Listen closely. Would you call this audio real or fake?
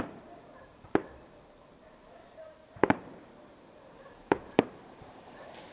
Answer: fake